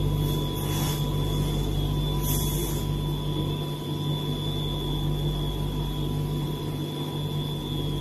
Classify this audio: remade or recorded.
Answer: recorded